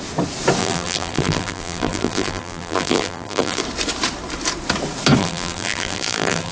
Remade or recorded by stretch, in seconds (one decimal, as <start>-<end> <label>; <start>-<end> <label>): 0.0-0.6 recorded; 0.6-3.6 remade; 3.6-5.2 recorded; 5.2-6.5 remade